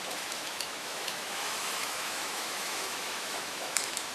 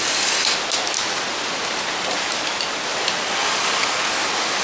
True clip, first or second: second